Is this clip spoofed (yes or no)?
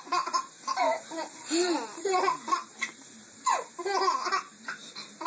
yes